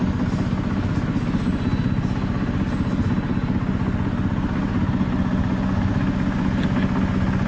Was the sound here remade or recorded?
recorded